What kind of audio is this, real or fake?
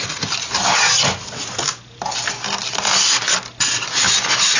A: real